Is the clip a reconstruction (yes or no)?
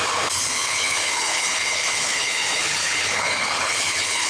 yes